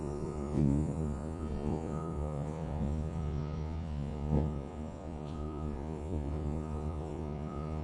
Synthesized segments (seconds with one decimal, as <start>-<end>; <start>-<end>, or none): 0.0-7.8